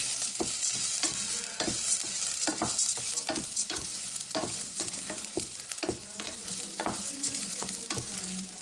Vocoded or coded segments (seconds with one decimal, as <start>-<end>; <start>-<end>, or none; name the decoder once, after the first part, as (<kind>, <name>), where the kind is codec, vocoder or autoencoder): 3.6-7.7 (vocoder, Vocos)